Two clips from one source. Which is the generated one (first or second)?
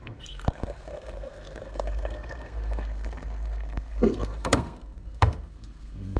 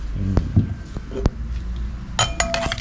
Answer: first